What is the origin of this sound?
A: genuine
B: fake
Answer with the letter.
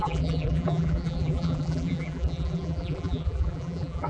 B